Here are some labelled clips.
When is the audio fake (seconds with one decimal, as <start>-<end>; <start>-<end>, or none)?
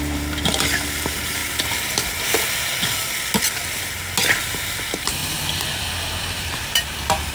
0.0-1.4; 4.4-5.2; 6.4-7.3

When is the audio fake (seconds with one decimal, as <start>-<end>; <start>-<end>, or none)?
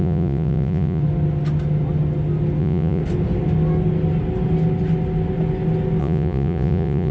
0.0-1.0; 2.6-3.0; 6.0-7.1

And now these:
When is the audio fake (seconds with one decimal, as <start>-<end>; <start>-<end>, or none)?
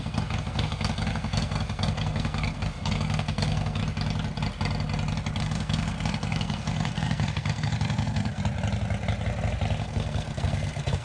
0.0-3.8; 5.4-8.4; 9.8-11.0